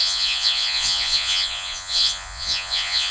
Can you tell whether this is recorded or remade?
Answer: remade